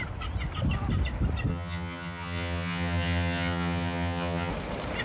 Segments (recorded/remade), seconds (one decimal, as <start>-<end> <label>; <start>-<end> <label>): 0.0-1.5 recorded; 1.5-4.5 remade; 4.5-5.0 recorded